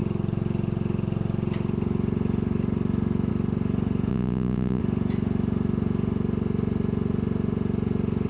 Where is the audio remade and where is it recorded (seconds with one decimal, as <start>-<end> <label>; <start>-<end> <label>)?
0.0-4.1 recorded; 4.1-4.8 remade; 4.8-8.3 recorded

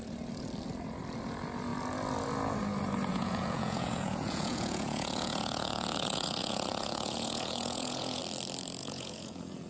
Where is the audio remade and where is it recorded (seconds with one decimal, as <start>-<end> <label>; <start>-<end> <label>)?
0.0-3.1 recorded; 3.1-8.2 remade; 8.2-8.8 recorded; 8.8-9.7 remade

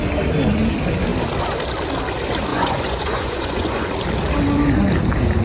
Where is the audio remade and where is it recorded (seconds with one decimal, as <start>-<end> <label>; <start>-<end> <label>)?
0.0-2.5 recorded; 2.5-3.9 remade; 3.9-5.4 recorded

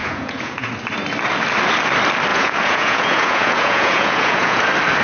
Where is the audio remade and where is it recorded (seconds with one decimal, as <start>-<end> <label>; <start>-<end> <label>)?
0.0-0.7 remade; 0.7-2.3 recorded; 2.3-4.6 remade; 4.6-5.0 recorded

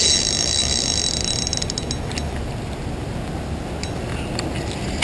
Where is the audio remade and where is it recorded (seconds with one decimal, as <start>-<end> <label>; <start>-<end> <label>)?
0.0-5.0 recorded

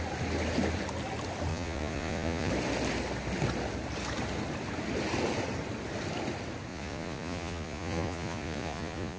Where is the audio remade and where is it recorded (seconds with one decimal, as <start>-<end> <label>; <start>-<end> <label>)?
0.0-1.5 recorded; 1.5-2.5 remade; 2.5-6.7 recorded; 6.7-9.2 remade